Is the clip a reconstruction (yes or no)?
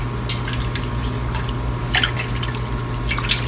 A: no